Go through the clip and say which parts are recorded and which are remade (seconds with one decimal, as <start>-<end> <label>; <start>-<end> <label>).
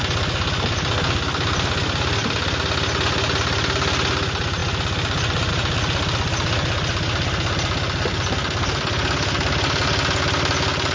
0.0-10.9 recorded